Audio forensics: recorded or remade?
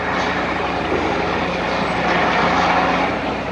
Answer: recorded